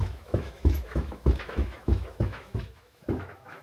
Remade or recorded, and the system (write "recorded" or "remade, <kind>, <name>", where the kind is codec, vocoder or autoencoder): remade, autoencoder, DAC-VAE